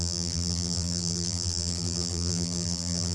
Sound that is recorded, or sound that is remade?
remade